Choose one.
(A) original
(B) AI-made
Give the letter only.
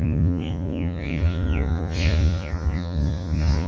B